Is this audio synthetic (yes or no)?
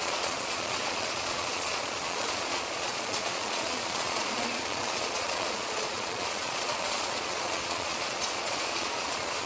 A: yes